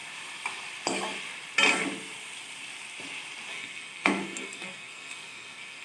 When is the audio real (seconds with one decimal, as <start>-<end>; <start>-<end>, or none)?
0.0-3.5